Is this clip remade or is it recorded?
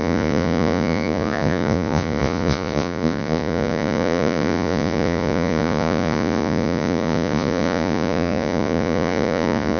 remade